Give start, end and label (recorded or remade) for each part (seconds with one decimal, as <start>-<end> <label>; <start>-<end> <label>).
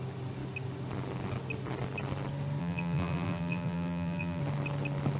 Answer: 0.0-2.6 recorded; 2.6-4.4 remade; 4.4-5.2 recorded